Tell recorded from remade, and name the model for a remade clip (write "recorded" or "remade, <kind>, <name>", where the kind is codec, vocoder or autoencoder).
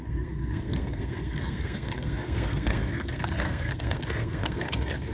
remade, codec, SNAC